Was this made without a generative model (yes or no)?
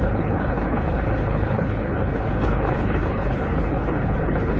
no